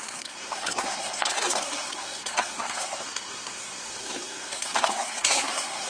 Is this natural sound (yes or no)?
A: no